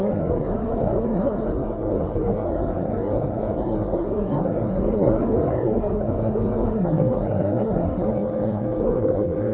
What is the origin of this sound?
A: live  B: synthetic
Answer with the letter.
B